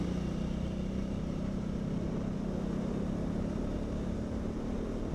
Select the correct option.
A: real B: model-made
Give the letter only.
A